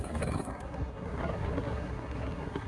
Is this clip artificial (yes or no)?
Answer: yes